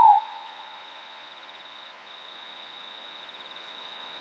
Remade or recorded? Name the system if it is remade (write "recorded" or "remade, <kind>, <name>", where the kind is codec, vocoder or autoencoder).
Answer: remade, vocoder, Vocos